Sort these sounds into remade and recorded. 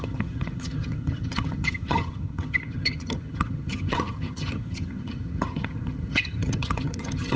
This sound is remade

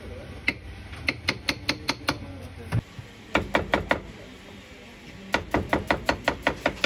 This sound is recorded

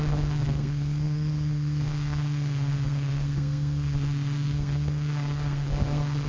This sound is remade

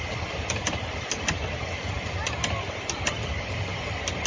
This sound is recorded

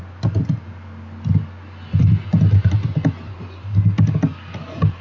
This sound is recorded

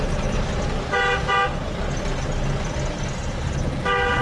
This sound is recorded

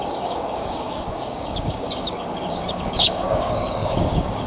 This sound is remade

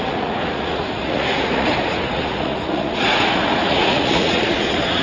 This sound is remade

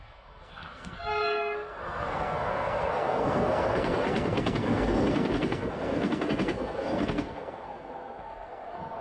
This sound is remade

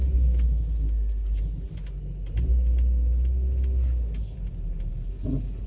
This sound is recorded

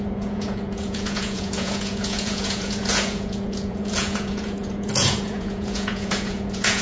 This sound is remade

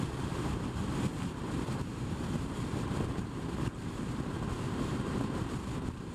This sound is remade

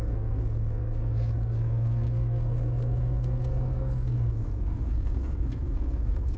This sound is remade